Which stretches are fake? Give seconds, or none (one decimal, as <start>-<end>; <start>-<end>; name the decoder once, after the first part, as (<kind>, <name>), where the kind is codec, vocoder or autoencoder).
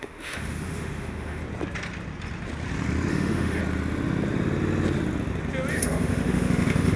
0.0-1.4 (autoencoder, DAC-VAE); 3.1-3.6; 5.7-7.0